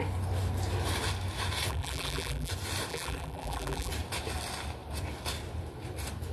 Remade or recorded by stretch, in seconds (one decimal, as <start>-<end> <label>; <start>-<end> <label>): 0.0-1.7 recorded; 1.7-2.5 remade; 2.5-2.9 recorded; 2.9-3.9 remade; 3.9-6.3 recorded